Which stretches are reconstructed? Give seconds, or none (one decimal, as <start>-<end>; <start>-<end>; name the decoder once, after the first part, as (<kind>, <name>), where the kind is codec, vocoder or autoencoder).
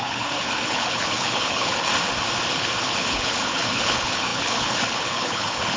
0.0-1.9 (codec, HILCodec); 2.5-5.8